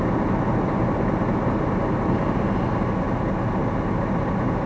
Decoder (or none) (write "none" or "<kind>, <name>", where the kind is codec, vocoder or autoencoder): none